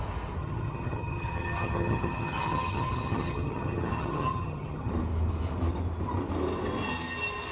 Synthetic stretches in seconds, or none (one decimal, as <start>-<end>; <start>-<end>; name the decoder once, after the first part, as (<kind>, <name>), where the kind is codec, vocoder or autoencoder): 0.4-4.9 (vocoder, HiFi-GAN)